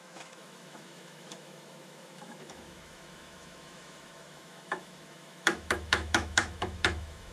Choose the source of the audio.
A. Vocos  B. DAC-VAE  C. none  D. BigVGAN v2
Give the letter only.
B